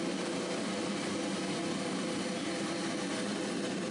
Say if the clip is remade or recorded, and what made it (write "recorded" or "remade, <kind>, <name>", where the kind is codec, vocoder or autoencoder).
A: recorded